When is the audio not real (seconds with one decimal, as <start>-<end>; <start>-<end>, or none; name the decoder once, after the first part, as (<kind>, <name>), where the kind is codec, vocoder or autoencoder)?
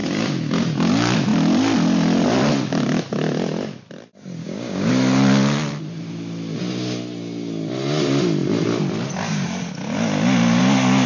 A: 4.4-4.9 (codec, DAC)